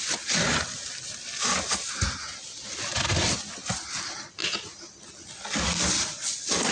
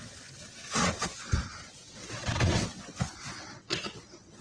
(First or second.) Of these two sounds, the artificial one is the second